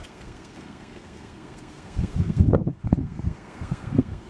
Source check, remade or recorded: remade